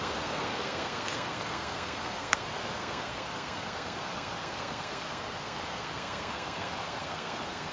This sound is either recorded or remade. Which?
remade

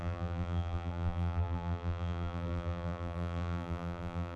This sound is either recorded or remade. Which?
remade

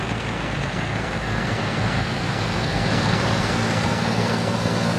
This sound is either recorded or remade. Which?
remade